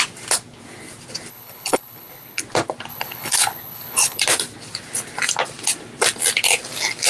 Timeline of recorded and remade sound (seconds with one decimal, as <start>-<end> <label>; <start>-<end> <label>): 0.0-1.3 recorded; 1.3-2.4 remade; 2.4-2.9 recorded; 2.9-4.2 remade; 4.2-7.1 recorded